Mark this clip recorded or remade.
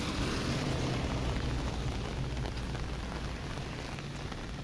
recorded